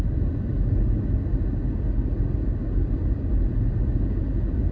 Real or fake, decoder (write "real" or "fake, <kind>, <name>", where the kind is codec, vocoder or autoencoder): real